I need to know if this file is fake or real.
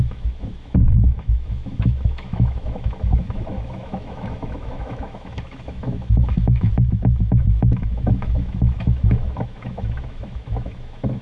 fake